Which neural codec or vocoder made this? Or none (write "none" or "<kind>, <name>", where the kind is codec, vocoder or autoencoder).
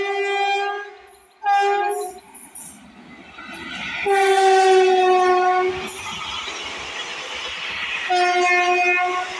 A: none